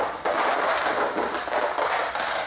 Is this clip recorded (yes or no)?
yes